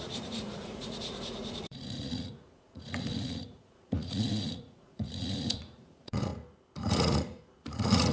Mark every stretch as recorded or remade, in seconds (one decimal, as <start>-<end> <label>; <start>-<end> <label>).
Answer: 0.0-6.3 remade; 6.3-6.8 recorded; 6.8-8.1 remade